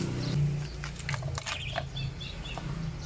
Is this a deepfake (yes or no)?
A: no